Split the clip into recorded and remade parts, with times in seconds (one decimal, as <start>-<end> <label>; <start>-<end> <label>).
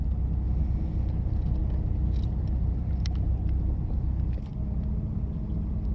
0.0-5.9 recorded